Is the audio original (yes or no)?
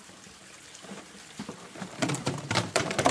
no